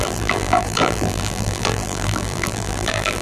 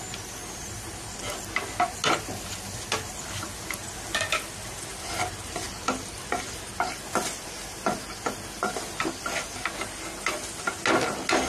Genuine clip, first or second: second